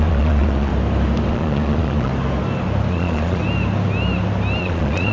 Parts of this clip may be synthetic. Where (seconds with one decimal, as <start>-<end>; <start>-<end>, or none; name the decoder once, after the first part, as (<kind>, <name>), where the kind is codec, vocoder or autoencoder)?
0.0-0.7 (vocoder, Vocos); 1.3-2.1; 2.9-3.4; 4.6-5.1